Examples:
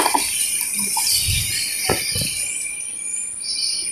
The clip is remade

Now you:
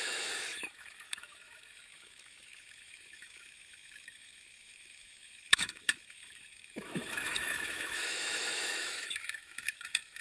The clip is remade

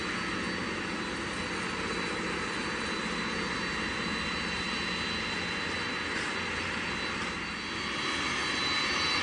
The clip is recorded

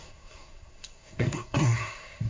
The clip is remade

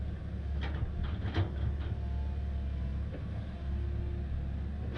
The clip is recorded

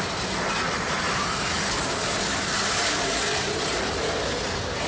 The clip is recorded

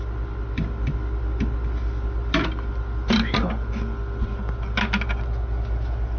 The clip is recorded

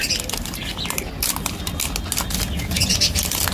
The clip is recorded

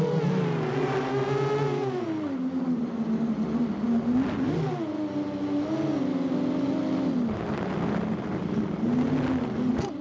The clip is recorded